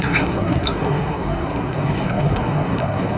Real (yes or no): no